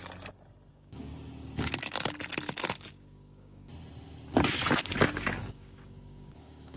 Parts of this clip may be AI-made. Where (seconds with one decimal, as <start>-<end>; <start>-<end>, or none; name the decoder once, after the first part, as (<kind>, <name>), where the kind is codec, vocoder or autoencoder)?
0.7-1.1 (codec, DAC); 2.9-3.7; 5.4-6.8

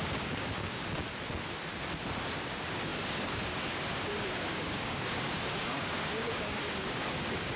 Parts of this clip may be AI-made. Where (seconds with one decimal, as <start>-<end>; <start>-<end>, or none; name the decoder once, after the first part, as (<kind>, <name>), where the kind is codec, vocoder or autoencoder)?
0.0-0.8 (codec, DAC); 2.5-7.6

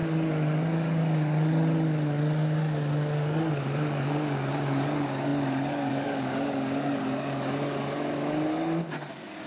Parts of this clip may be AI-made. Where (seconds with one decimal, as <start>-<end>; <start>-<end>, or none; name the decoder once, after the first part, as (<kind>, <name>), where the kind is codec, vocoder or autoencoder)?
0.0-9.5 (codec, DAC)

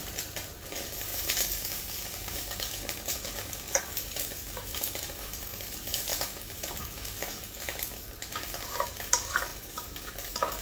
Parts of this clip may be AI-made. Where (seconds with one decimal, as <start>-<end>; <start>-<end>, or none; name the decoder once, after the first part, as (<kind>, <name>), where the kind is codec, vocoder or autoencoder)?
0.7-10.6 (codec, DAC)

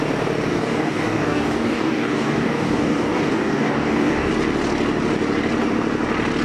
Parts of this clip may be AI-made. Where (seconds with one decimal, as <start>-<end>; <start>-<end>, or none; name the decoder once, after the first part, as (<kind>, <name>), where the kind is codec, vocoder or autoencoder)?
0.5-4.3 (codec, DAC)

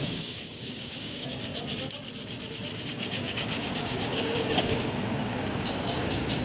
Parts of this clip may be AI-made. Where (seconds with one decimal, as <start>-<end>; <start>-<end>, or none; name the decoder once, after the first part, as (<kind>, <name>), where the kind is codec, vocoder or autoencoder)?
0.0-1.5 (codec, DAC); 2.8-6.4

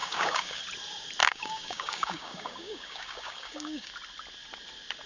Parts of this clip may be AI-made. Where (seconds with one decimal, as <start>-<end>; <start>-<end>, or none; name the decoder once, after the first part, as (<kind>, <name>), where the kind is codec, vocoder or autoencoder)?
0.0-0.6 (codec, DAC); 1.2-3.9